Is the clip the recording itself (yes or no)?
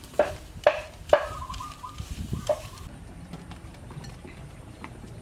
no